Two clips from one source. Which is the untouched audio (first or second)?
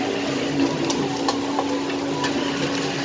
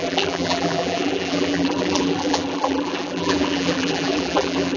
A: first